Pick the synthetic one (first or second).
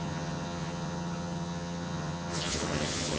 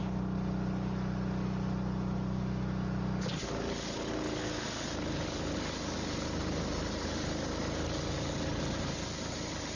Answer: first